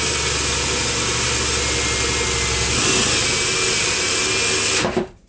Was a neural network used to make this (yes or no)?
no